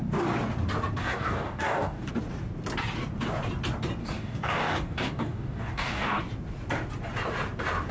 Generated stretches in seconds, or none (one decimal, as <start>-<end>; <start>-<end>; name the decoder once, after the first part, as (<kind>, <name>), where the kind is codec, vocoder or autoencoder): 1.0-2.1 (codec, DAC); 4.0-6.2